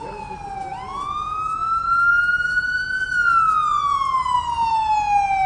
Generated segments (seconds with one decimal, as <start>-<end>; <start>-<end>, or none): none

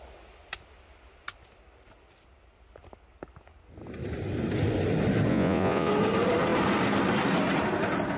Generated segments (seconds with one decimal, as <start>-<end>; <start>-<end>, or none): 5.3-5.9